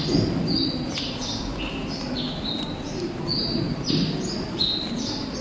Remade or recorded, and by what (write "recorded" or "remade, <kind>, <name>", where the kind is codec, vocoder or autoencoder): recorded